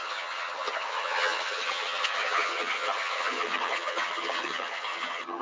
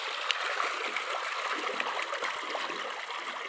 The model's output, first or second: first